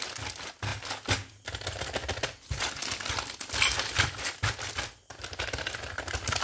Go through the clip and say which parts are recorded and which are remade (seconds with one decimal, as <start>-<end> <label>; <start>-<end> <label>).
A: 0.0-6.4 recorded